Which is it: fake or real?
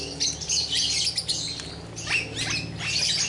real